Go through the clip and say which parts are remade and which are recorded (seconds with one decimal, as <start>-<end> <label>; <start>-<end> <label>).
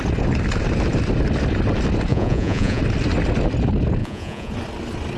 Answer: 0.0-2.1 recorded; 2.1-2.8 remade; 2.8-4.0 recorded; 4.0-4.5 remade; 4.5-5.2 recorded